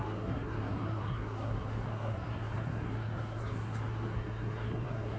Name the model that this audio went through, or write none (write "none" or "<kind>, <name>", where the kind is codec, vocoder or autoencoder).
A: codec, SNAC